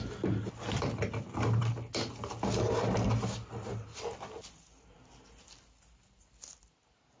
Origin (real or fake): real